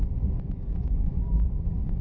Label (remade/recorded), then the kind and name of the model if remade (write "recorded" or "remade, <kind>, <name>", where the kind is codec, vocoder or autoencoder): remade, vocoder, Vocos